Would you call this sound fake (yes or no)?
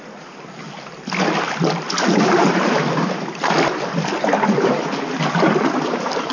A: no